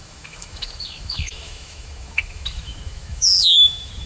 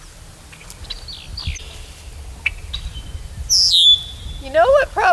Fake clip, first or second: first